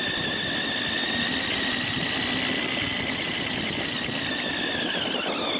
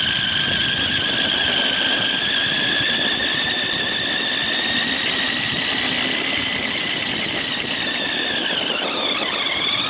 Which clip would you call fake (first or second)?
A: second